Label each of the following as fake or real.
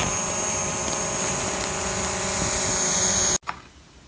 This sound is real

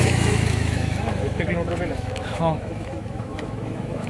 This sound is fake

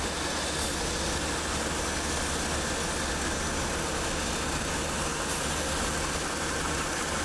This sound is real